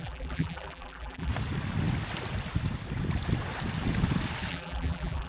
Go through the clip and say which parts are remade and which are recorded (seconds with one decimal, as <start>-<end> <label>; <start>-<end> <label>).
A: 0.0-1.3 remade; 1.3-4.5 recorded; 4.5-5.3 remade